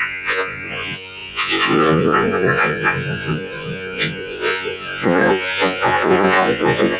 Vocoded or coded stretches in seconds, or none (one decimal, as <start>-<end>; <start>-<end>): 0.0-7.0

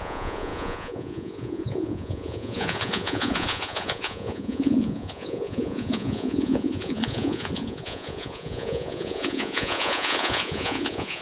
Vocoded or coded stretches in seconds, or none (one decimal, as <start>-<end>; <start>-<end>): 0.0-11.2

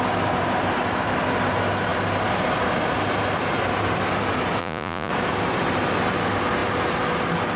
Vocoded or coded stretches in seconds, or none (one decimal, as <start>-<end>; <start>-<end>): 4.6-5.1

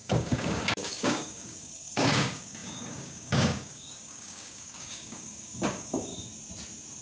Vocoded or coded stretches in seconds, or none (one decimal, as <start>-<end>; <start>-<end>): 0.0-6.1

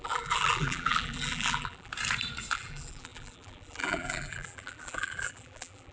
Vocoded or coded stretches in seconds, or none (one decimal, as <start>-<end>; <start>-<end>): 0.0-1.9; 2.5-5.9

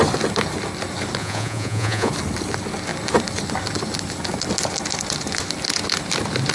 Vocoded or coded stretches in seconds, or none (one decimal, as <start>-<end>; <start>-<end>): 1.2-2.1

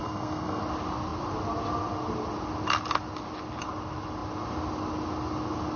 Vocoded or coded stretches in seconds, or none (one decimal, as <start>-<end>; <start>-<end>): 0.0-0.6

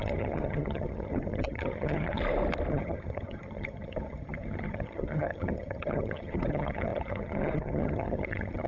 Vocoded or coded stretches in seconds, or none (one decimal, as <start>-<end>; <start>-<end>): 0.0-2.2; 2.7-8.7